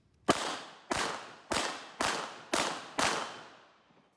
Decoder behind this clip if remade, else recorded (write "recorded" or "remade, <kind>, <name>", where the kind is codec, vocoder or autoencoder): recorded